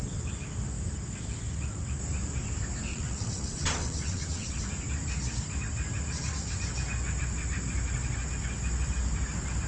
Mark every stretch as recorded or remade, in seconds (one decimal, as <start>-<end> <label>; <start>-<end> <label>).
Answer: 0.0-2.9 recorded; 2.9-4.6 remade; 4.6-9.7 recorded